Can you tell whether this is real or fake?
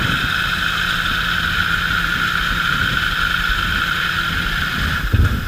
real